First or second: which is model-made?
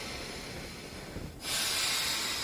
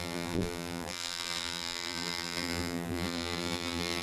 second